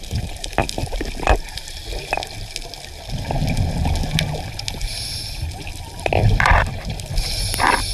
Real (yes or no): yes